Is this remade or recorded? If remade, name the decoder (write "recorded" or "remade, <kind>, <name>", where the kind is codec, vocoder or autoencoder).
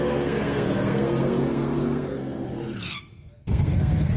remade, codec, SNAC